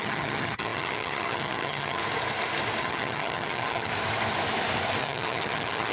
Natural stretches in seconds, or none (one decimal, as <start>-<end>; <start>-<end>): 2.0-2.8; 3.9-5.0